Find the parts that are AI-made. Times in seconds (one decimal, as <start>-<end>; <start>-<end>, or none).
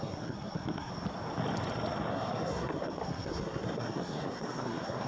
0.0-0.9; 2.1-5.1